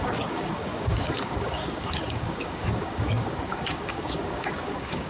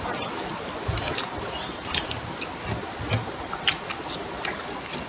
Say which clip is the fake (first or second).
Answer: first